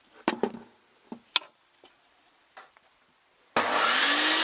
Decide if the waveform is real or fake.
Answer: real